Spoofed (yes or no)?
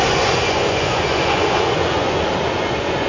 yes